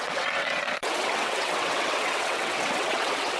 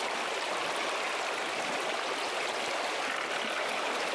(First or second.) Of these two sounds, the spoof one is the first